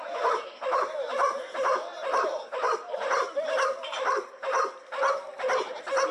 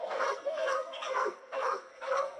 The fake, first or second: second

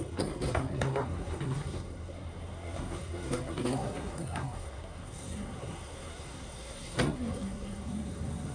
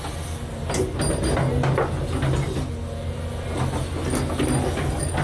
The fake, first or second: first